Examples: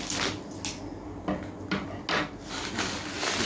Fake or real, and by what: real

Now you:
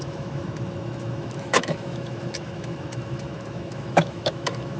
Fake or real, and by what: fake, autoencoder, DAC-VAE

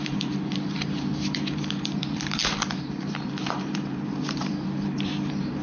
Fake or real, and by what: fake, vocoder, BigVGAN v2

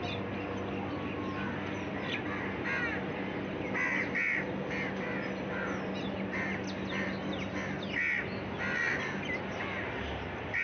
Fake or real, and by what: real